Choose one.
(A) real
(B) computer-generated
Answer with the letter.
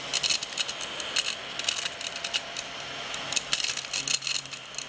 A